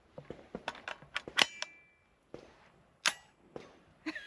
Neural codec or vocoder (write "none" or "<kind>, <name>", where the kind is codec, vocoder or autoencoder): none